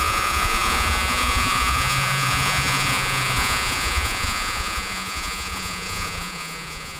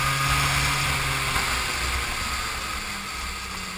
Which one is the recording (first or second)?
second